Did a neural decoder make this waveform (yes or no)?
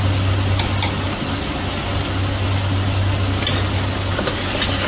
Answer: no